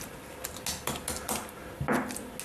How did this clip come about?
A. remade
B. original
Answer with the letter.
B